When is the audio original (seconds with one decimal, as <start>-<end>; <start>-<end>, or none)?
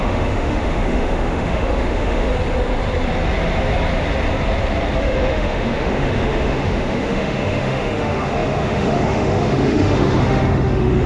2.3-5.0